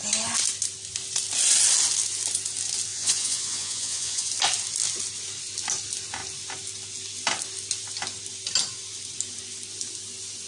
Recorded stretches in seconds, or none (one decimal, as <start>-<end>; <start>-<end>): 0.0-2.9; 4.3-10.5